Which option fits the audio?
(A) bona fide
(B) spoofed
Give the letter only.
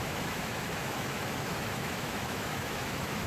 B